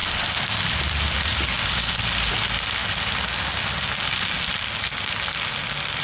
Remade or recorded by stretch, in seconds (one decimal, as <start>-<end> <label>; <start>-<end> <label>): 0.0-2.3 remade; 2.3-6.0 recorded